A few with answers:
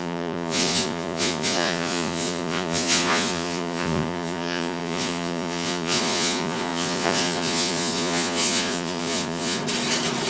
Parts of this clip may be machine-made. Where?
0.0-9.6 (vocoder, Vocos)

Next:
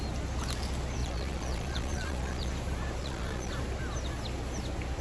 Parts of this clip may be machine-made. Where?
1.0-2.5 (vocoder, Vocos); 3.0-3.5

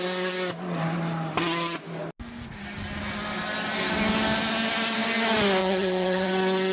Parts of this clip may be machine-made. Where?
5.6-6.3 (vocoder, HiFi-GAN)

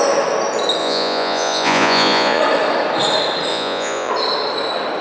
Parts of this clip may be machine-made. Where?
0.8-2.4 (vocoder, Vocos); 3.5-4.1

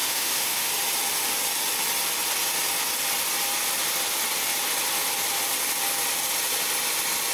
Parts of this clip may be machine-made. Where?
0.0-0.7 (autoencoder, DAC-VAE)

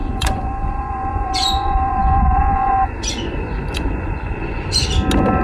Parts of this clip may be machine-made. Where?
0.0-4.8 (vocoder, Vocos)

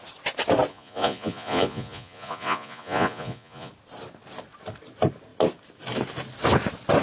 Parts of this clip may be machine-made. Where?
0.7-3.7 (vocoder, Vocos)

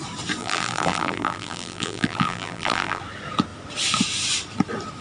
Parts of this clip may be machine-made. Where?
0.4-3.0 (vocoder, BigVGAN v2)